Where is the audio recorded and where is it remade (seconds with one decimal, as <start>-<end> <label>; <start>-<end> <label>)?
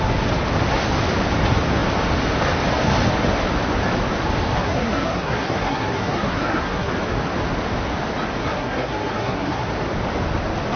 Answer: 0.0-4.6 recorded; 4.6-6.9 remade; 6.9-8.4 recorded; 8.4-9.7 remade; 9.7-10.8 recorded